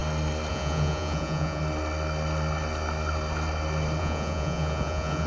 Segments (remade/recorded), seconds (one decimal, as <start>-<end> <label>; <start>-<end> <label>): 0.0-0.5 recorded; 0.5-1.6 remade; 1.6-4.0 recorded; 4.0-5.3 remade